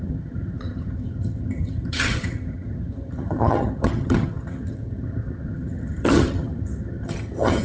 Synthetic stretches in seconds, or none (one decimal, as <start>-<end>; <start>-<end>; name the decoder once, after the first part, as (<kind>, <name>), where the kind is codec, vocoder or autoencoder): 0.0-7.6 (vocoder, HiFi-GAN)